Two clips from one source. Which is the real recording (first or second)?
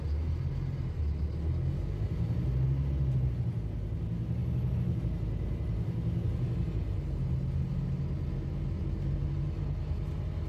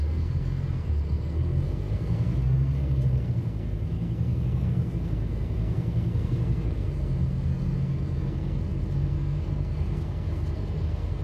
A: first